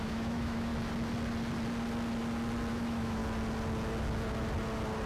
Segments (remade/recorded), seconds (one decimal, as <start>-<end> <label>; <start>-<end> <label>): 0.0-0.7 remade; 0.7-2.7 recorded; 2.7-3.2 remade; 3.2-5.1 recorded